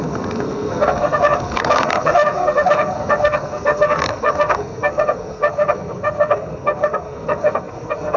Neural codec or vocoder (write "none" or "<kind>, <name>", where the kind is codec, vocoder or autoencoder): codec, SNAC